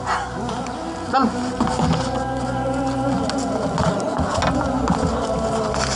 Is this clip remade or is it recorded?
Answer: recorded